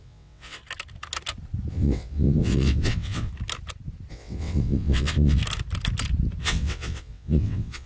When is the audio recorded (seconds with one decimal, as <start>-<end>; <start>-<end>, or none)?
0.6-1.7; 3.3-4.1; 5.4-6.4

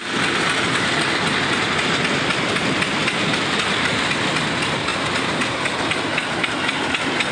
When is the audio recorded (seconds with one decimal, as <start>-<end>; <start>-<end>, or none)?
0.0-7.3

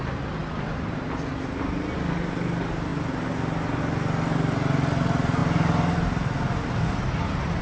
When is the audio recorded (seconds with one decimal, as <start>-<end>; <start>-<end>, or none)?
0.0-7.6

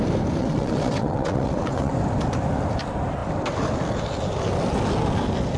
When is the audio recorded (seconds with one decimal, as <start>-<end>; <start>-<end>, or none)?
0.0-0.4; 1.9-5.6